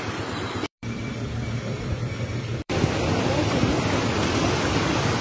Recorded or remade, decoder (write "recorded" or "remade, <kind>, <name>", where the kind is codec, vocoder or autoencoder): remade, vocoder, BigVGAN v2